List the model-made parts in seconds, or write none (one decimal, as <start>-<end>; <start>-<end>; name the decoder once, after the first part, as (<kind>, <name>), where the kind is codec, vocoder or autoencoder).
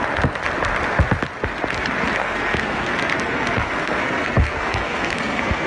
2.2-5.7 (codec, SNAC)